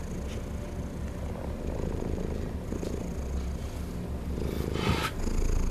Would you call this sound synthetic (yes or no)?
no